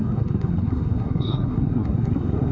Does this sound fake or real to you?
fake